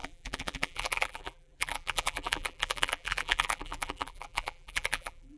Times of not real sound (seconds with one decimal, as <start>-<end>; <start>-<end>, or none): 0.0-5.4